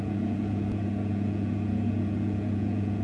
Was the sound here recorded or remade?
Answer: remade